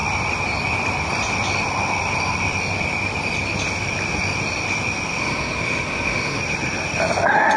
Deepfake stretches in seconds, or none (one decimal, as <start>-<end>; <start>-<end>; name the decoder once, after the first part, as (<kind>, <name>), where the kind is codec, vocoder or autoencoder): 5.2-6.4 (autoencoder, DAC-VAE)